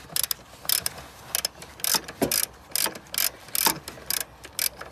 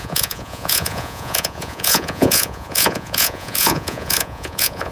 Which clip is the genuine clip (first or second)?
first